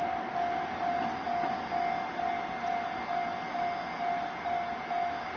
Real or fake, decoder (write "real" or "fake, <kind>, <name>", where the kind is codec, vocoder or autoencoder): real